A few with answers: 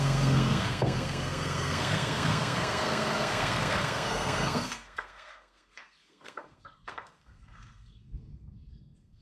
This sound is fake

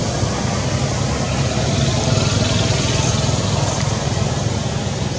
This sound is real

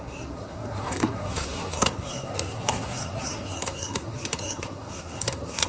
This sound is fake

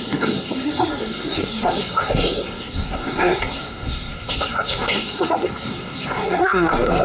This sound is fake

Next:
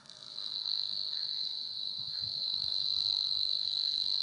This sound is fake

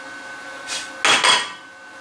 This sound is real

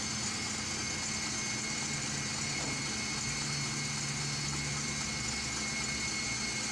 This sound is real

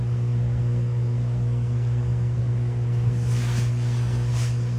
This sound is fake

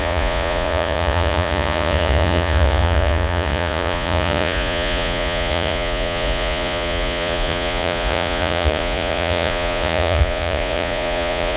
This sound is fake